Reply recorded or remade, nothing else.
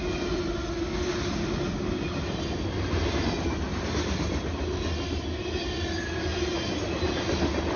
recorded